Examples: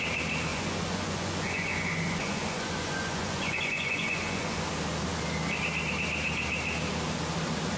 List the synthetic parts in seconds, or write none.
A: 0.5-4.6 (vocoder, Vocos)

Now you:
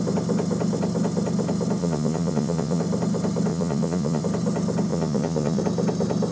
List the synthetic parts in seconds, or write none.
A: 1.8-2.8 (vocoder, Vocos); 3.5-4.2; 4.9-5.6

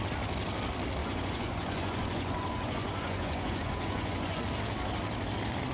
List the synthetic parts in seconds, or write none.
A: 1.0-4.4 (vocoder, Vocos)

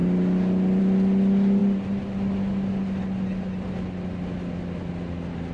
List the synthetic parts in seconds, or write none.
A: none

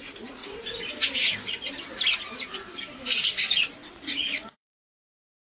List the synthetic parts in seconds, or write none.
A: 0.0-0.4 (vocoder, Vocos); 3.4-5.4

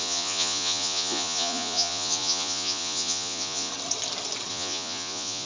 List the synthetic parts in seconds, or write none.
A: 0.0-3.7 (vocoder, Vocos); 4.5-5.5

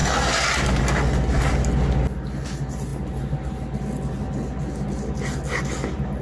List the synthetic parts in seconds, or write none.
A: none

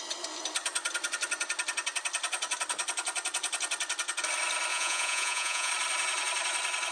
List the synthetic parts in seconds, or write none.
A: 4.7-5.7 (vocoder, Vocos)